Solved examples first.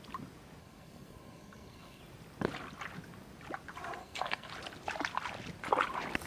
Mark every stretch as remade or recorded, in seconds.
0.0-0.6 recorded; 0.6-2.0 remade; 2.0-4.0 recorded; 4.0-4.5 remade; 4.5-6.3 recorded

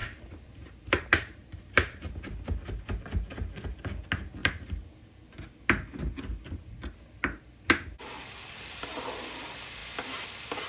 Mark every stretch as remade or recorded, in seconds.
0.0-2.1 remade; 2.1-4.4 recorded; 4.4-5.2 remade; 5.2-10.7 recorded

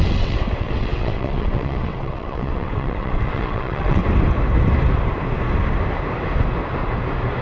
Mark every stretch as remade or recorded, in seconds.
0.0-4.0 remade; 4.0-7.4 recorded